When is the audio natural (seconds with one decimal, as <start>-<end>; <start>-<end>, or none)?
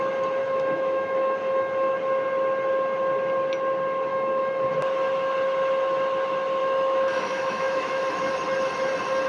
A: 0.0-0.4; 2.0-4.1; 4.7-6.6; 8.3-9.3